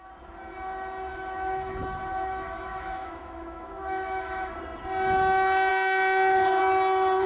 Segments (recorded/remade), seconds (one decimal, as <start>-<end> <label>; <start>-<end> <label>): 0.0-1.1 recorded; 1.1-4.5 remade; 4.5-5.7 recorded; 5.7-6.6 remade; 6.6-7.3 recorded